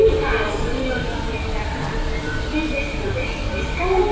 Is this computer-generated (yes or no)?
yes